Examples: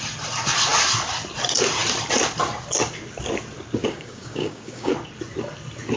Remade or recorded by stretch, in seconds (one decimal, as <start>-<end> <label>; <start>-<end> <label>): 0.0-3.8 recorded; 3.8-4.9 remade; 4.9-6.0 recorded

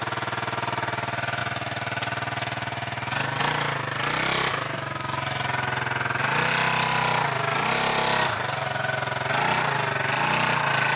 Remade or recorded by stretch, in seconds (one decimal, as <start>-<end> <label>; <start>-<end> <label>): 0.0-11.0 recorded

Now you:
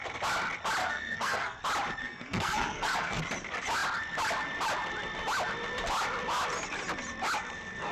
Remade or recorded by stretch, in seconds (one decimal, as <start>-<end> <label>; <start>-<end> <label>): 0.0-0.8 recorded; 0.8-1.6 remade; 1.6-2.0 recorded; 2.0-3.2 remade; 3.2-7.9 recorded